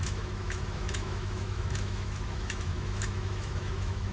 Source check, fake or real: fake